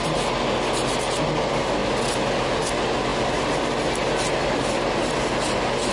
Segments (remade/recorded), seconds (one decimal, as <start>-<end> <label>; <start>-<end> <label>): 0.0-5.9 recorded